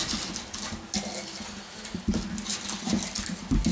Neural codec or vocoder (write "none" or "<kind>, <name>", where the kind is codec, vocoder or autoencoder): none